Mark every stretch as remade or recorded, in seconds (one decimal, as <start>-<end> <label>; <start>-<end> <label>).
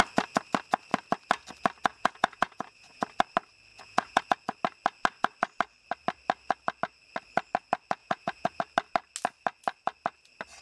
0.0-1.9 recorded; 1.9-3.0 remade; 3.0-3.7 recorded; 3.7-4.2 remade; 4.2-8.0 recorded; 8.0-8.6 remade; 8.6-10.6 recorded